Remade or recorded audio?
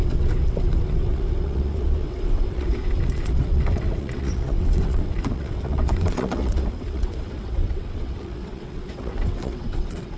remade